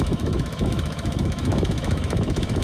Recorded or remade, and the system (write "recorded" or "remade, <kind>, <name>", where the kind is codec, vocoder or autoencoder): remade, autoencoder, DAC-VAE